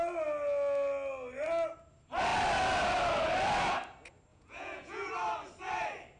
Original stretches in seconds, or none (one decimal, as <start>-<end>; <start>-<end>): 0.0-4.3; 5.1-6.2